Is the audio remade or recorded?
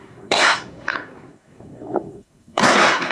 remade